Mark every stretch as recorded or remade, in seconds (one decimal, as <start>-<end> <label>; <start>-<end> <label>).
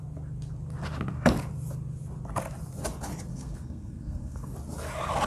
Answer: 0.0-3.3 recorded; 3.3-4.5 remade; 4.5-5.3 recorded